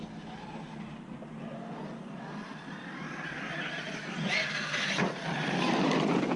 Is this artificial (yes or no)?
no